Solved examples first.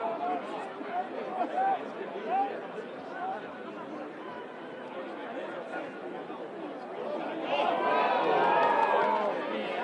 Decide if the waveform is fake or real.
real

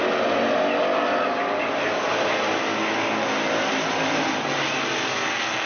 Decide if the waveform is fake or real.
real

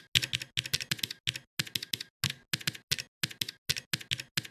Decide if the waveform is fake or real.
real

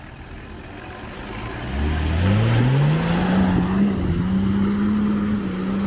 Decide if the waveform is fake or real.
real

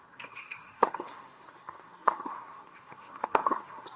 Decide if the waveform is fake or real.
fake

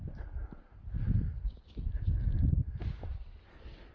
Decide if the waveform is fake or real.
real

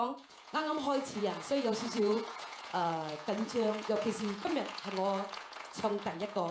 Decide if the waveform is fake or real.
fake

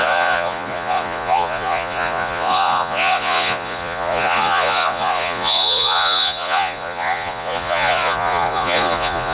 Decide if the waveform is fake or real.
fake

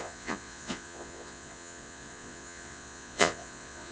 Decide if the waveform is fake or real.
fake